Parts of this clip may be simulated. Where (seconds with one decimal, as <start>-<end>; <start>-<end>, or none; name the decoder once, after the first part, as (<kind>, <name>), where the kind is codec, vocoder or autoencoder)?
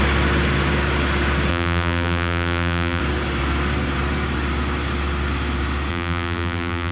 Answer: 1.5-3.0 (vocoder, BigVGAN v2); 5.9-6.9